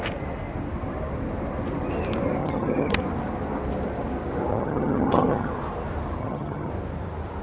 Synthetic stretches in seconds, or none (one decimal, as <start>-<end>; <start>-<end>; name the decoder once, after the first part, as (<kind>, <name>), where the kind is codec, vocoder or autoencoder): 2.4-3.0 (vocoder, HiFi-GAN); 4.5-5.5; 6.2-6.7

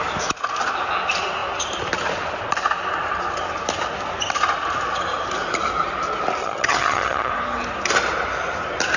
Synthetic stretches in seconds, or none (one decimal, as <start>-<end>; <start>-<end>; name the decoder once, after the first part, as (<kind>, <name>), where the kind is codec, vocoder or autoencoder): 6.4-7.3 (vocoder, HiFi-GAN)

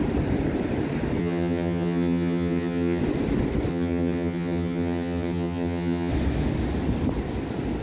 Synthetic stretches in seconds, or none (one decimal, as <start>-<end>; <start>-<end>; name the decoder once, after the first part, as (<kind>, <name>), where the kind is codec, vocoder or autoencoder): 1.2-3.0 (vocoder, HiFi-GAN); 3.7-6.1

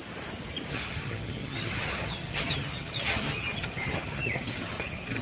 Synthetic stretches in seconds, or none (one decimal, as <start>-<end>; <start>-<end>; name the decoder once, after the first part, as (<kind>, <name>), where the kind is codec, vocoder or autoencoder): 0.7-5.2 (vocoder, HiFi-GAN)

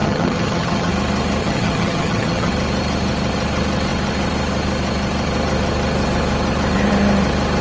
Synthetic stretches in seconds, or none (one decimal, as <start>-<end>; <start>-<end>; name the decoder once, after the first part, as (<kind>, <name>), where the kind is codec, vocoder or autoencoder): 0.0-0.9 (vocoder, HiFi-GAN); 1.4-2.5